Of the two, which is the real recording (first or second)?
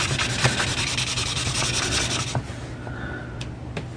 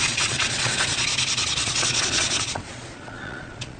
first